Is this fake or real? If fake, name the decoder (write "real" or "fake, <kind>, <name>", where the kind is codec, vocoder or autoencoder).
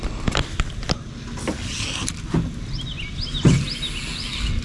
real